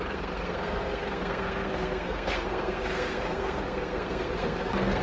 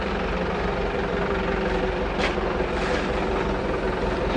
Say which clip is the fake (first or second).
first